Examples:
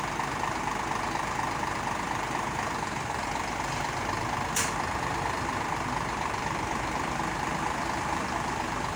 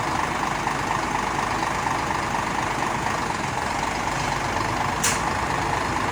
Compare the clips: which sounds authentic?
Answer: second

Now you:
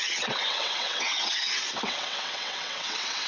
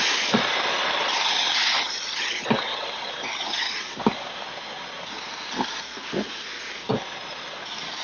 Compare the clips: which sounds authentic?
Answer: second